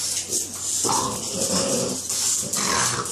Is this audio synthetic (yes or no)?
no